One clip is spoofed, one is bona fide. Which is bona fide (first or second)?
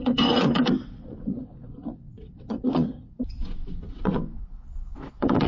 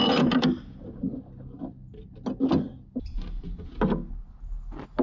second